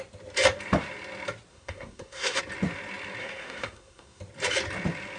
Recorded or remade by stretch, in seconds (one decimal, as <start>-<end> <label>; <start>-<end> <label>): 0.0-1.5 recorded; 1.5-2.4 remade; 2.4-3.2 recorded; 3.2-4.2 remade; 4.2-5.2 recorded